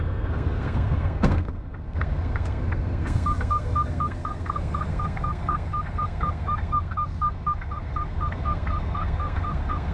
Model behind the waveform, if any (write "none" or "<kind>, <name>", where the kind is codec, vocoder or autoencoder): codec, SNAC